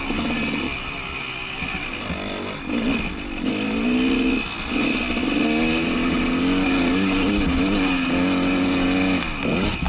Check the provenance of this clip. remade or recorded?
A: recorded